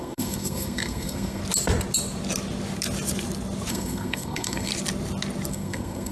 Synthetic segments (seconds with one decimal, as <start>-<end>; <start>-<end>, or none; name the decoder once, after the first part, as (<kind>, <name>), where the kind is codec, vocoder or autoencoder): 0.0-1.4 (codec, SNAC); 3.7-4.7; 5.5-6.1